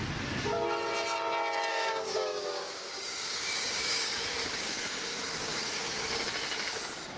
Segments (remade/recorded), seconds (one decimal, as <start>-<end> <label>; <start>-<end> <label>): 0.0-1.7 recorded; 1.7-6.0 remade; 6.0-7.2 recorded